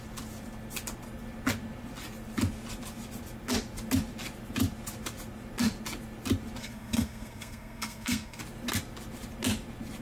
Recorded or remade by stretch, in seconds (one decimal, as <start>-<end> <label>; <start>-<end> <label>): 0.0-6.6 recorded; 6.6-8.4 remade; 8.4-10.0 recorded